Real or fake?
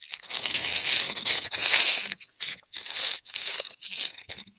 fake